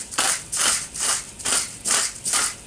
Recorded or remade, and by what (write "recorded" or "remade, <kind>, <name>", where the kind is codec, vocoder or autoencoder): recorded